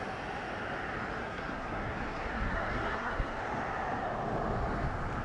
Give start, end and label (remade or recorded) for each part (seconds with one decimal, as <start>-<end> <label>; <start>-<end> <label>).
0.0-1.2 recorded; 1.2-3.4 remade; 3.4-5.2 recorded